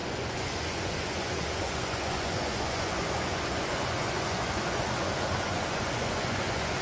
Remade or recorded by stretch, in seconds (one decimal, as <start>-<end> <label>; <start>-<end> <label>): 0.0-6.8 remade